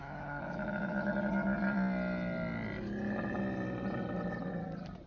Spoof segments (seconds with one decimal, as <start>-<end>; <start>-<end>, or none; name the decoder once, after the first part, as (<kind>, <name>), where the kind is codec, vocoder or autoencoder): 0.0-1.1 (autoencoder, DAC-VAE)